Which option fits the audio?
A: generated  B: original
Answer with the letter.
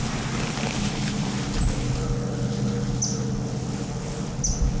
B